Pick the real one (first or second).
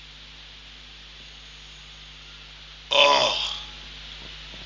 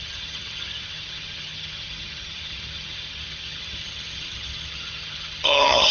first